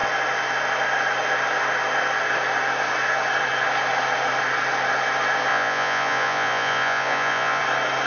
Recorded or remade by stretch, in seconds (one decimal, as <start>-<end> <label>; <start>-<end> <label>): 0.0-5.5 recorded; 5.5-7.6 remade; 7.6-8.1 recorded